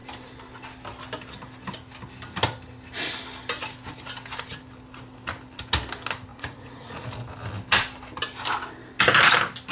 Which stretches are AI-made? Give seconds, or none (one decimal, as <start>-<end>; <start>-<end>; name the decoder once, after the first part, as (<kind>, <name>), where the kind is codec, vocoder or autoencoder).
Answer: 6.3-7.0 (vocoder, Vocos)